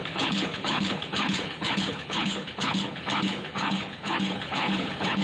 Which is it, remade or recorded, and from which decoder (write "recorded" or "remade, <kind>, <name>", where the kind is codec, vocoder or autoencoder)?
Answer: remade, codec, HILCodec